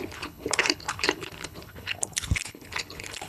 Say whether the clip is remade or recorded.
remade